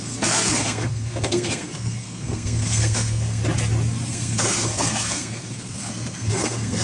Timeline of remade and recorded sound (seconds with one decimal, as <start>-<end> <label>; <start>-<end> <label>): 0.0-3.4 remade; 3.4-4.1 recorded; 4.1-6.8 remade